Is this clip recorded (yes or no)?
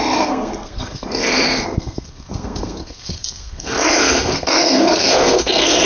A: no